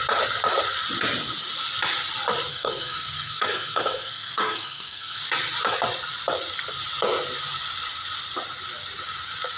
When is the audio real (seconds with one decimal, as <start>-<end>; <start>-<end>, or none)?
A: 0.0-2.5; 5.2-9.6

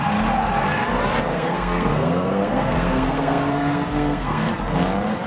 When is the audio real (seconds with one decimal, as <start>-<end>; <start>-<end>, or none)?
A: 0.0-1.3; 4.5-5.3